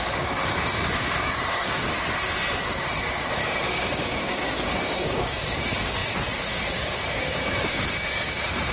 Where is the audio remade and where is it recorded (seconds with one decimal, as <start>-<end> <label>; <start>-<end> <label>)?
0.0-1.9 remade; 1.9-2.6 recorded; 2.6-8.7 remade